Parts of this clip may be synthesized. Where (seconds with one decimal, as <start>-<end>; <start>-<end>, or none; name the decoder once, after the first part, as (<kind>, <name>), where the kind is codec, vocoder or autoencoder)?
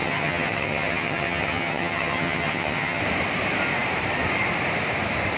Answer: 0.0-3.0 (vocoder, HiFi-GAN)